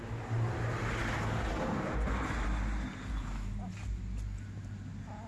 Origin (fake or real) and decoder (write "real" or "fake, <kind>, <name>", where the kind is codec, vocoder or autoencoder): real